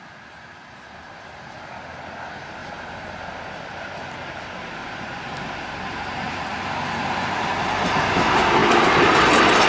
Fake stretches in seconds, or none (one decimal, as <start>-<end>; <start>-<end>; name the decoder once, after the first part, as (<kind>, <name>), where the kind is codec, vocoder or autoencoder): 4.8-5.3 (vocoder, Vocos)